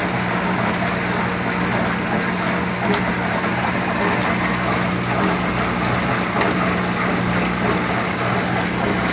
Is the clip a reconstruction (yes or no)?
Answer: no